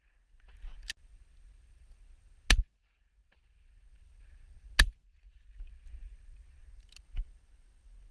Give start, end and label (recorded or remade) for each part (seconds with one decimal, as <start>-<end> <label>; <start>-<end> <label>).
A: 0.0-8.1 recorded